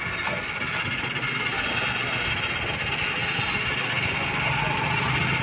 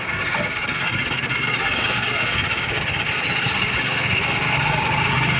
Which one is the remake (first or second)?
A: second